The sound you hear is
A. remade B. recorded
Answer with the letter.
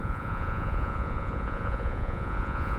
A